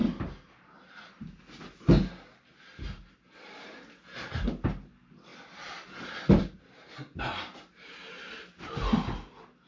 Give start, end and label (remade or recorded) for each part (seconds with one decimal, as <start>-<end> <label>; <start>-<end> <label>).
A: 0.0-9.7 recorded